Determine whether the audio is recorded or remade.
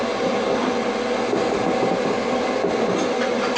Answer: recorded